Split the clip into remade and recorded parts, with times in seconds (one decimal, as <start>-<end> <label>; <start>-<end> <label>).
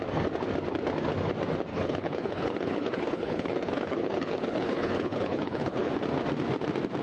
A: 0.0-1.7 recorded; 1.7-5.9 remade; 5.9-7.0 recorded